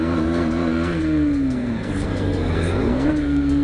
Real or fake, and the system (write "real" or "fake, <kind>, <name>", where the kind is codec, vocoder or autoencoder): fake, codec, SNAC